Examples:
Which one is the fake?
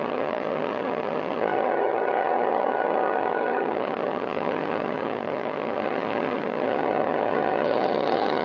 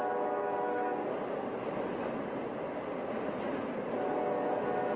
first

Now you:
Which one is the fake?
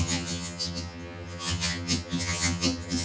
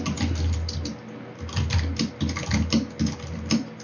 first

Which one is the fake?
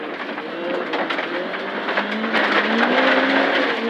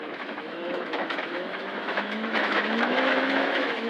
second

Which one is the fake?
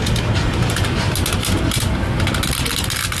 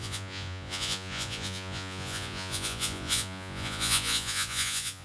second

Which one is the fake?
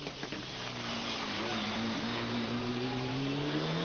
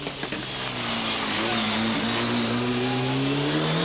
first